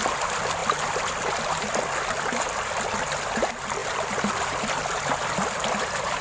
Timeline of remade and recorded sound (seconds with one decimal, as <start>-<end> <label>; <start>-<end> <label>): 0.0-6.2 recorded

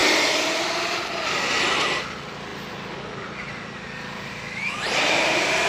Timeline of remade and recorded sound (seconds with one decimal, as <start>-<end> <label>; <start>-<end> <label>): 0.0-5.7 recorded

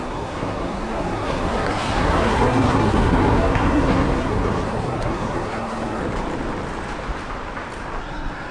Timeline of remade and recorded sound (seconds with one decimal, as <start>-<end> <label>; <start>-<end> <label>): 0.0-6.0 remade; 6.0-8.0 recorded; 8.0-8.5 remade

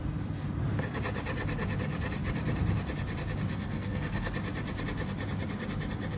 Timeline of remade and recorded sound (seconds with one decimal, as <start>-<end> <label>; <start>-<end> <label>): 0.0-3.5 recorded; 3.5-4.3 remade; 4.3-6.2 recorded

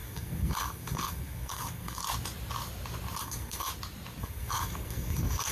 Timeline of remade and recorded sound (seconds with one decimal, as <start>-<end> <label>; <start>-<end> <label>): 0.0-2.0 remade; 2.0-3.2 recorded; 3.2-3.7 remade; 3.7-4.2 recorded; 4.2-5.5 remade